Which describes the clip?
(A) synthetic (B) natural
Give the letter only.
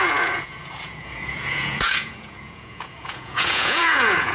A